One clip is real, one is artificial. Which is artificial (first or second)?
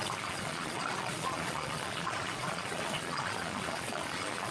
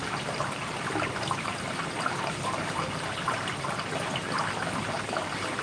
first